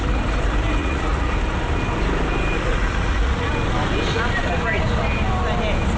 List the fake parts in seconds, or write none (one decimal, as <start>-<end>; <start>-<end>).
0.8-1.3; 2.7-3.5